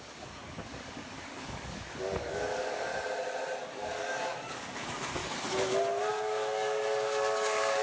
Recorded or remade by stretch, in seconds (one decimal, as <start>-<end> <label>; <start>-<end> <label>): 0.0-2.9 remade; 2.9-3.6 recorded; 3.6-5.2 remade; 5.2-6.1 recorded; 6.1-7.8 remade